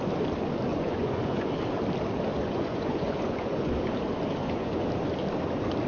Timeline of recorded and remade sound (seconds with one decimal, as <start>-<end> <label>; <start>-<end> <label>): 0.0-0.7 recorded; 0.7-1.5 remade; 1.5-2.3 recorded; 2.3-3.8 remade; 3.8-4.4 recorded; 4.4-4.9 remade; 4.9-5.9 recorded